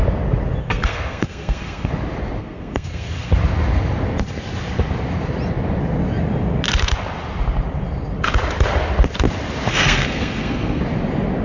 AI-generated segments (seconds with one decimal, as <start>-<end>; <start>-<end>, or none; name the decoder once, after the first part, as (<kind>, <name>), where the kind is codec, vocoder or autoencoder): 0.6-1.9 (codec, SNAC); 2.4-3.3; 9.7-10.8